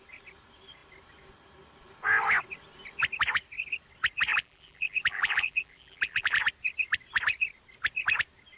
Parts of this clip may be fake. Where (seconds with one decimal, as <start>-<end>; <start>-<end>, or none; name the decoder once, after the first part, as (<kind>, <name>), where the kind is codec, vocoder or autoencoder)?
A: 4.3-6.4 (vocoder, BigVGAN v2)